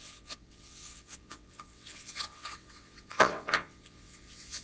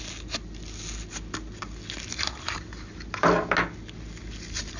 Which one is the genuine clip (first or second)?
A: second